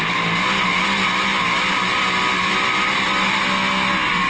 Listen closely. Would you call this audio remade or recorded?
recorded